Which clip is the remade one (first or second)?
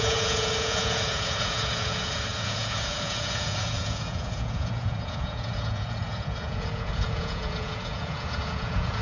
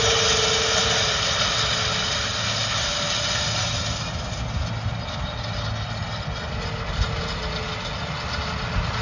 first